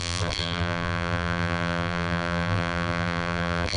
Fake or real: fake